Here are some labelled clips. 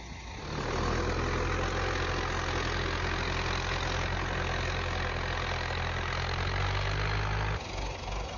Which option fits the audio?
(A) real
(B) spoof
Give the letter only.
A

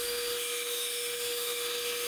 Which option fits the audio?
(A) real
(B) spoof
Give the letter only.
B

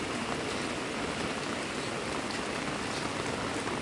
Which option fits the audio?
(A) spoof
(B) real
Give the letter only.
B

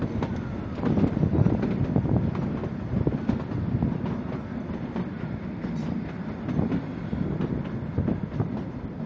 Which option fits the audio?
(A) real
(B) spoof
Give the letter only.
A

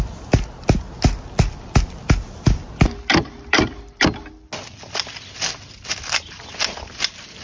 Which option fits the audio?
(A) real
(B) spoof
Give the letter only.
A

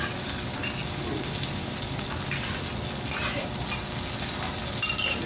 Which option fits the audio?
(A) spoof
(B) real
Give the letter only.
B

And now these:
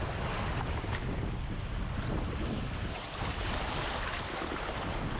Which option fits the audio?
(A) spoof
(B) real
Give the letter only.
B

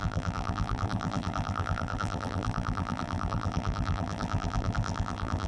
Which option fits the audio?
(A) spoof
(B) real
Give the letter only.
A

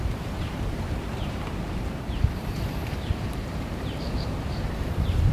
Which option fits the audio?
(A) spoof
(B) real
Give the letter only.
A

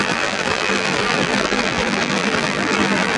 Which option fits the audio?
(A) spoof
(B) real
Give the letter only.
A